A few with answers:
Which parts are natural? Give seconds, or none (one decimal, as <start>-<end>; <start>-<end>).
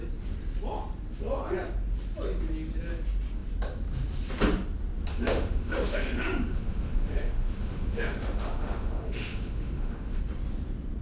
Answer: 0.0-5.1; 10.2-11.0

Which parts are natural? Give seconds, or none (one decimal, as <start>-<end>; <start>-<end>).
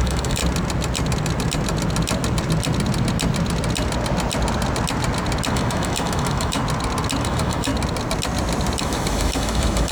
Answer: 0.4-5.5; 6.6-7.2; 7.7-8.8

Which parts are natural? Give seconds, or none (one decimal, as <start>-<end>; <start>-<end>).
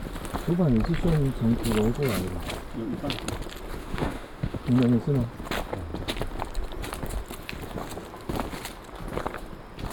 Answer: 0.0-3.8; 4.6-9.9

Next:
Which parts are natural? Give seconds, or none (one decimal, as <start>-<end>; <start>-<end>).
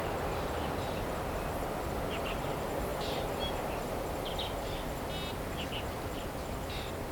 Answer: 0.0-7.1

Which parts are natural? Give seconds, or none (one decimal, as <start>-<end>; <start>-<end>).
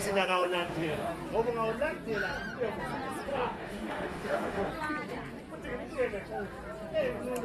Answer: 1.1-3.3; 4.7-7.4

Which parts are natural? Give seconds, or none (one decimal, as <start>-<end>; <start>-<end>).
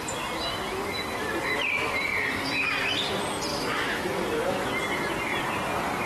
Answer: 0.0-3.5; 4.8-6.1